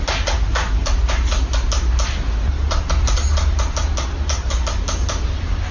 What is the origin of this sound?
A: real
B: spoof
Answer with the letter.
A